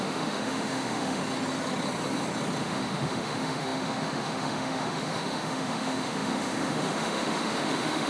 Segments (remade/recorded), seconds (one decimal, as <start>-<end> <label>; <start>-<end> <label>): 0.0-1.2 remade; 1.2-2.6 recorded; 2.6-8.1 remade